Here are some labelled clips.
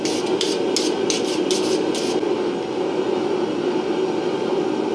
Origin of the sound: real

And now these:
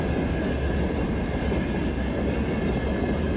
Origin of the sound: real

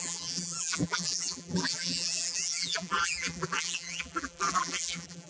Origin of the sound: fake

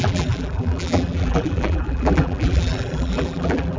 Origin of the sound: fake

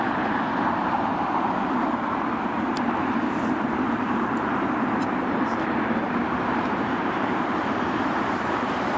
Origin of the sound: fake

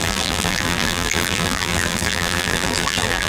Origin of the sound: fake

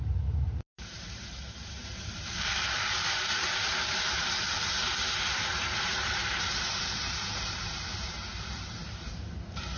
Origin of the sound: fake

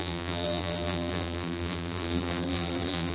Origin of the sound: fake